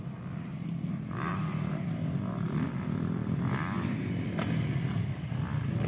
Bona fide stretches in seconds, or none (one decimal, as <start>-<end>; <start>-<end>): 0.0-5.9

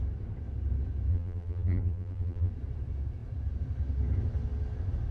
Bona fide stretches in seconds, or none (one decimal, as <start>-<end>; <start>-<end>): 0.0-1.1; 2.5-5.1

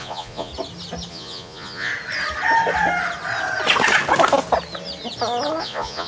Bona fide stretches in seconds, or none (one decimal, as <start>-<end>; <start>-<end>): 0.5-1.1; 1.9-5.6

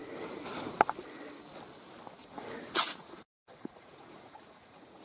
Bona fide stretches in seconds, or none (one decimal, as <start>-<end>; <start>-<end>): 0.0-2.2

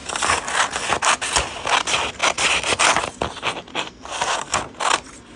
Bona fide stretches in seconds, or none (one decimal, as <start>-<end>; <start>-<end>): 0.0-3.7; 4.6-5.4

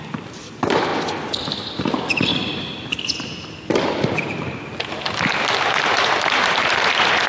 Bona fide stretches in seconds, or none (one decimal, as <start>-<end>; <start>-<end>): 0.9-1.8; 2.3-5.9

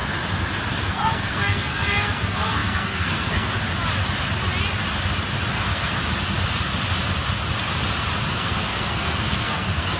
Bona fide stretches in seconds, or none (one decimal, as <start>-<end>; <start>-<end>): 0.0-0.7; 3.5-5.5; 6.0-8.3